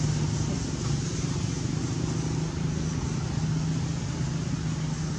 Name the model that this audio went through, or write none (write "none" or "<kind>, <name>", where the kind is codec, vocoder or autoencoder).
none